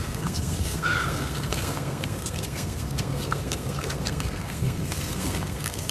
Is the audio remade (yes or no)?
yes